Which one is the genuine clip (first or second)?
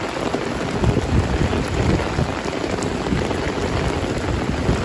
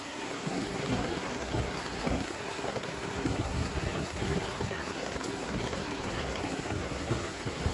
first